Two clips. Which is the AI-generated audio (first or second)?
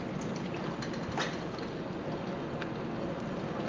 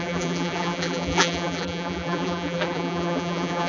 second